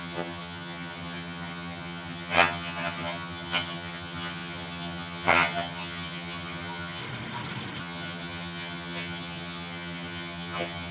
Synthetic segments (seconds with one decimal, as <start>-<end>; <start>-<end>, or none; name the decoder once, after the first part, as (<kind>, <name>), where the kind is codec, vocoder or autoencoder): 0.0-7.0 (vocoder, HiFi-GAN); 7.8-10.9